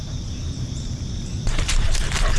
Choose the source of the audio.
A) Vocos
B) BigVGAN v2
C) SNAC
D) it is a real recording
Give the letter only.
B